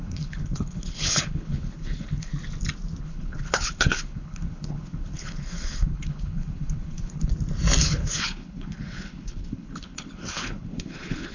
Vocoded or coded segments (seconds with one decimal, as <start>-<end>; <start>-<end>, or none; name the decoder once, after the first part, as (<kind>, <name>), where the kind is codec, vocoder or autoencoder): 0.0-2.3 (codec, HILCodec); 3.0-7.3; 7.8-11.3